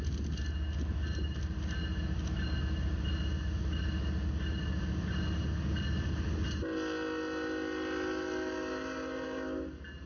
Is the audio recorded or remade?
recorded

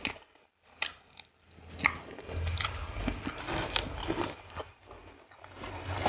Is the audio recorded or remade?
recorded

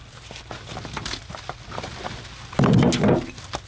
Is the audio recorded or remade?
recorded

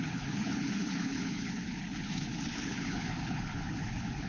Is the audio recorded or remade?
remade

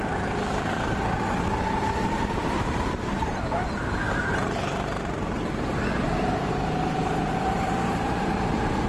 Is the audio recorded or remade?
remade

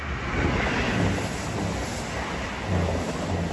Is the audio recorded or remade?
recorded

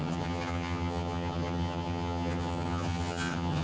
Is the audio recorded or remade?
remade